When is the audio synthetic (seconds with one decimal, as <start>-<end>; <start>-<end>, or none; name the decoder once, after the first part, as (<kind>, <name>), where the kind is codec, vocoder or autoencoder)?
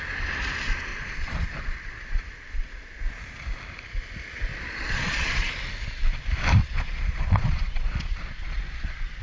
0.9-2.2 (vocoder, Vocos); 4.5-5.5; 6.6-9.2